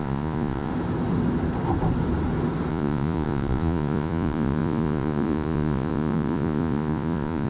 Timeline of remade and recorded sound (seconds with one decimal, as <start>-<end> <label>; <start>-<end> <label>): 0.0-0.7 remade; 0.7-2.7 recorded; 2.7-7.5 remade